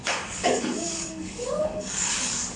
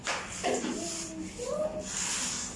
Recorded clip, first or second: second